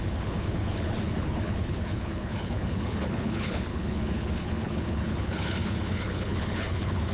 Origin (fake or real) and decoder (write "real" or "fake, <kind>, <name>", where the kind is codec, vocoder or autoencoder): fake, codec, HILCodec